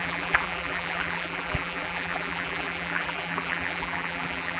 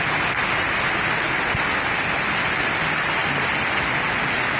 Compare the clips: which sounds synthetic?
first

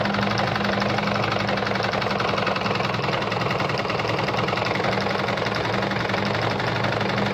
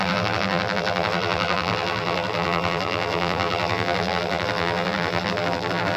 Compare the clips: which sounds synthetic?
second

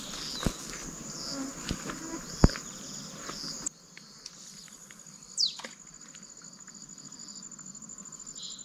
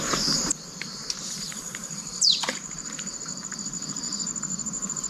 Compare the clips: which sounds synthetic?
second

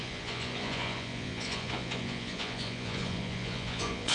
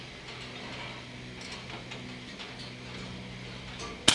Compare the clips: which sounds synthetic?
first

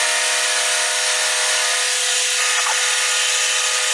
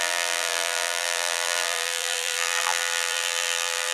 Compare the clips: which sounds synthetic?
second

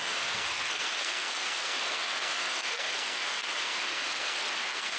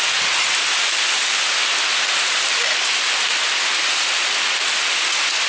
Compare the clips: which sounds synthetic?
first